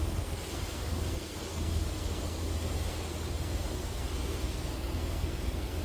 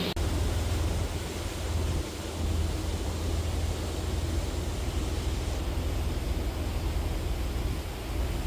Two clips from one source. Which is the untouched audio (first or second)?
second